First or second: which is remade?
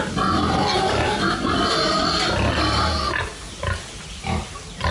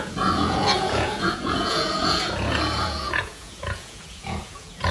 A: second